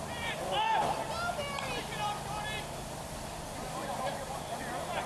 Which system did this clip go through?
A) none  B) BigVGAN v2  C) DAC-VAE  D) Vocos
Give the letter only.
A